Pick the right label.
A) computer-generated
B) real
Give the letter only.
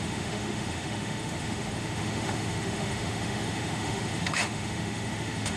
A